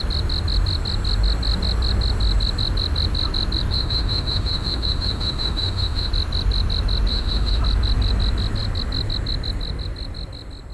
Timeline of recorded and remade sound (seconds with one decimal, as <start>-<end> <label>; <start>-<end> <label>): 0.0-3.7 recorded; 3.7-6.1 remade; 6.1-7.1 recorded; 7.1-7.6 remade; 7.6-10.7 recorded